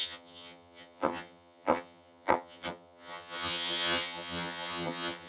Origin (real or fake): fake